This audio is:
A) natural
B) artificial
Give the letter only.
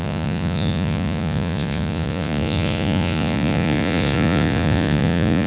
B